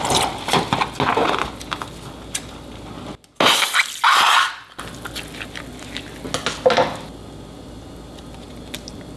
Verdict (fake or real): real